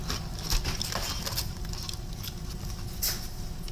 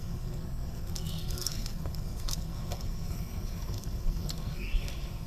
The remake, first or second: second